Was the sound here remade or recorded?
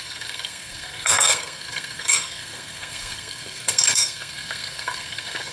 remade